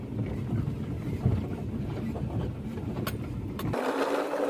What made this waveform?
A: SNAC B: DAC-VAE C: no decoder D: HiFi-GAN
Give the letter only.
C